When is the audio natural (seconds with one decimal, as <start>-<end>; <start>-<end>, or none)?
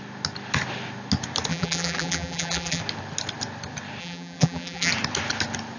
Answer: 0.0-1.5; 2.8-4.0; 4.9-5.8